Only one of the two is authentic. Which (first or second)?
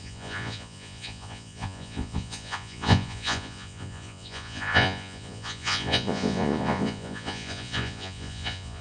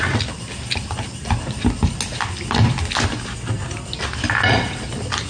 second